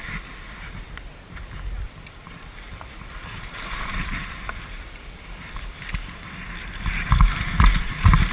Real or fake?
real